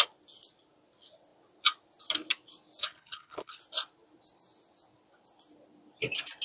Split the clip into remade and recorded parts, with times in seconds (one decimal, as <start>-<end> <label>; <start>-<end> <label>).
0.0-2.8 recorded; 2.8-3.6 remade; 3.6-6.4 recorded